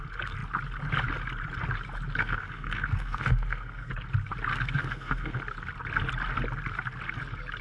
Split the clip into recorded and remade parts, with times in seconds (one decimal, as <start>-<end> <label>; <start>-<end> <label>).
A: 0.0-2.2 recorded; 2.2-3.9 remade; 3.9-4.5 recorded; 4.5-5.4 remade; 5.4-7.6 recorded